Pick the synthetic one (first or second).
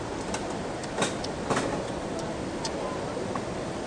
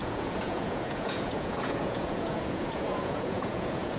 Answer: second